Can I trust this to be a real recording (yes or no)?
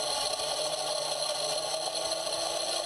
yes